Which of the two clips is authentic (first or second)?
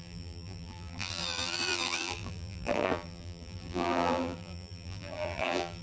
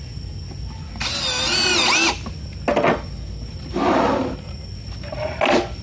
second